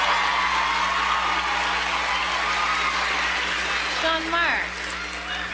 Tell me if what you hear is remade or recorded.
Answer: recorded